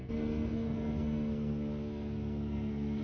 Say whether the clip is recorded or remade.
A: remade